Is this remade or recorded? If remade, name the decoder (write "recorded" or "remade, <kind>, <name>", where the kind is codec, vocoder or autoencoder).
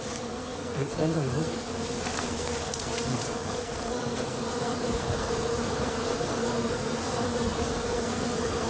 remade, codec, SNAC